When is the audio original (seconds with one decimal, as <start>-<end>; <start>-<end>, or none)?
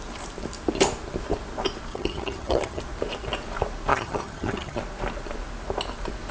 0.0-1.9; 2.8-3.9; 4.8-6.3